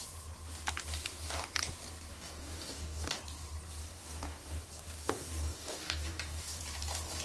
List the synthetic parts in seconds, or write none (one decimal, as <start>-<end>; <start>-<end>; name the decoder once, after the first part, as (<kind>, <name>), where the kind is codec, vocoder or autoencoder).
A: 2.1-3.2 (codec, DAC); 3.8-6.6